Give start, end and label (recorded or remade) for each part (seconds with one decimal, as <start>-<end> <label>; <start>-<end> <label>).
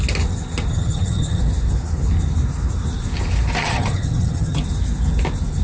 0.0-0.7 recorded; 0.7-1.4 remade; 1.4-3.6 recorded; 3.6-4.6 remade; 4.6-5.6 recorded